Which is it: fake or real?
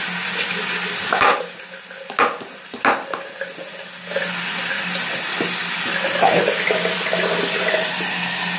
real